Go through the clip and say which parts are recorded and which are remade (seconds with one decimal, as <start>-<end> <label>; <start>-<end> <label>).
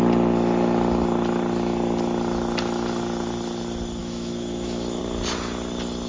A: 0.0-4.0 recorded; 4.0-5.0 remade; 5.0-6.1 recorded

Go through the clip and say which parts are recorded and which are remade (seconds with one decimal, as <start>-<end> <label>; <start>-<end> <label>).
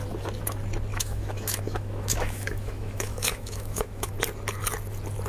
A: 0.0-0.9 recorded; 0.9-4.1 remade; 4.1-5.3 recorded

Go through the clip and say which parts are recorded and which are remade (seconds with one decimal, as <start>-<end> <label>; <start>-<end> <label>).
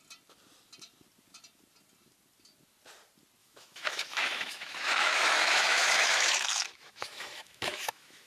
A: 0.0-3.4 recorded; 3.4-8.3 remade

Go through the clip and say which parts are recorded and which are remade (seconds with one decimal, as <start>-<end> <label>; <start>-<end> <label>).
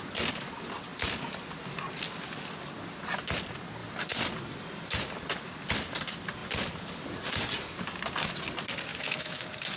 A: 0.0-8.9 recorded; 8.9-9.4 remade; 9.4-9.8 recorded